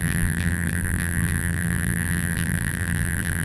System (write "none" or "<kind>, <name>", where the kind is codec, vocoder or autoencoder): vocoder, BigVGAN v2